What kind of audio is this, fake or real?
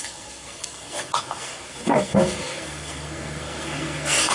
fake